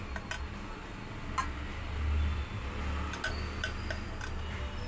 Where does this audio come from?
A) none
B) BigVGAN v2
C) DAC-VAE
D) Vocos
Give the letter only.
A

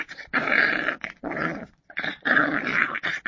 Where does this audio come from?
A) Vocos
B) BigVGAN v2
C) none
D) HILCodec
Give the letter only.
A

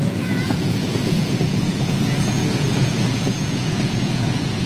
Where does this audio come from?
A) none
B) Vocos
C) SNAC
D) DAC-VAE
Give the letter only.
B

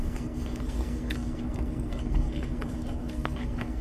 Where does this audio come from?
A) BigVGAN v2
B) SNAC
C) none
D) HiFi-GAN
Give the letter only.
B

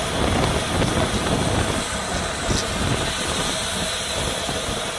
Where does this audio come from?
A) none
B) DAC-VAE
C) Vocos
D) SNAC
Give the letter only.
A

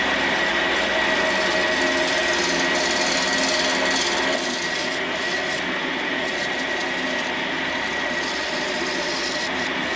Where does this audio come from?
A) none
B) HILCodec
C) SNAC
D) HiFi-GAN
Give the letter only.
A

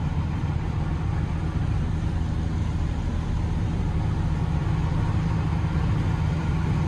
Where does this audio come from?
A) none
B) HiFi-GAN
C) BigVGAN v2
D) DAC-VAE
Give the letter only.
A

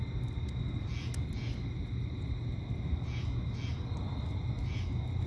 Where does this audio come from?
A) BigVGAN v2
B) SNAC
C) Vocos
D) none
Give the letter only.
D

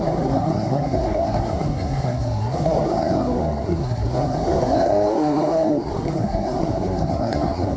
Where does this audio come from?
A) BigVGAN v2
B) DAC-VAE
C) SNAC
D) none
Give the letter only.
C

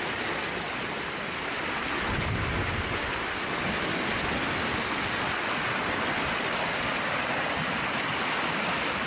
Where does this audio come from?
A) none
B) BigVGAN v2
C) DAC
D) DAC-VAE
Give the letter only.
A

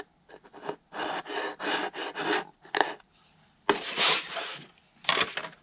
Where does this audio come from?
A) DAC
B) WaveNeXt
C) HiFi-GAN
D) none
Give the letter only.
D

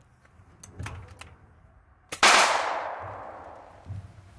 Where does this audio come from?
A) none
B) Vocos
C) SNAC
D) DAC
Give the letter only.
A